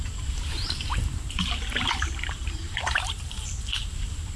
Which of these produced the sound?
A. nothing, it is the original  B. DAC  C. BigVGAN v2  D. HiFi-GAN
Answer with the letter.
C